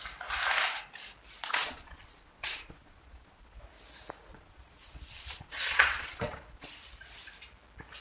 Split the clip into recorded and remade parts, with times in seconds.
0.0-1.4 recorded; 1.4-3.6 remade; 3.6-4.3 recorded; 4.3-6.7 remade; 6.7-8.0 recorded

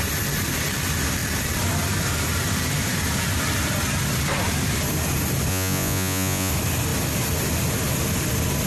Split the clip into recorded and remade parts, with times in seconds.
0.0-5.5 recorded; 5.5-6.5 remade; 6.5-8.7 recorded